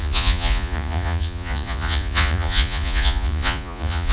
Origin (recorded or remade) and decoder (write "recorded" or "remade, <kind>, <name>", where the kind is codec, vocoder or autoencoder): remade, vocoder, Vocos